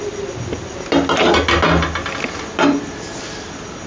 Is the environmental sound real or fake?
real